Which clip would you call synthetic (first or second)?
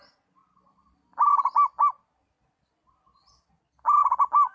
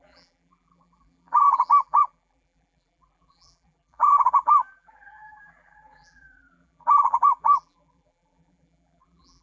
second